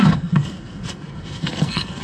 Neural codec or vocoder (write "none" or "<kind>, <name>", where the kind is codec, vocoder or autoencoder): codec, SNAC